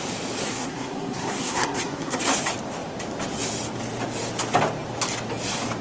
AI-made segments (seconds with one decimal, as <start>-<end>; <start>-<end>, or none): 0.4-2.2